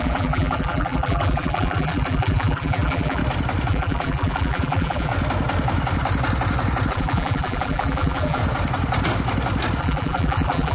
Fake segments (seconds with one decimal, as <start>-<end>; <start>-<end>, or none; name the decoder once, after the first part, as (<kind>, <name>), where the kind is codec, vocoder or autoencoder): 0.0-3.2 (vocoder, BigVGAN v2); 3.7-5.1; 6.9-8.4; 9.8-10.7